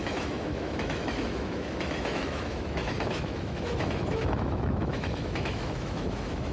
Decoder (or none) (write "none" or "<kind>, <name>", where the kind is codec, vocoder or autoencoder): autoencoder, DAC-VAE